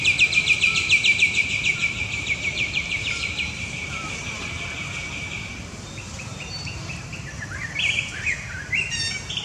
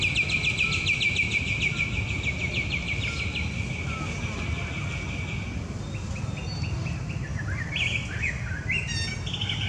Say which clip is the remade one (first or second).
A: first